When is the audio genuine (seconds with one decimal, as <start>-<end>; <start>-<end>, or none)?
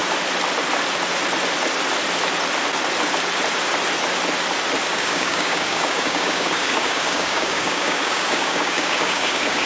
0.0-4.9